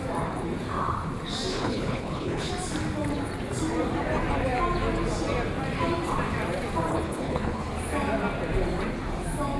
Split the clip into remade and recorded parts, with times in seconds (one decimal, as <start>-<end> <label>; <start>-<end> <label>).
0.0-1.5 recorded; 1.5-2.5 remade; 2.5-6.9 recorded; 6.9-7.6 remade; 7.6-9.6 recorded